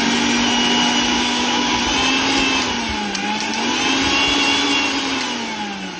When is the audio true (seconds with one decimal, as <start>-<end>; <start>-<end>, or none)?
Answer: 0.0-1.1; 1.8-6.0